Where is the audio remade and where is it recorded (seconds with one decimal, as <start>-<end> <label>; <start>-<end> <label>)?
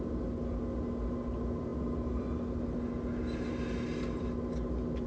0.0-5.1 recorded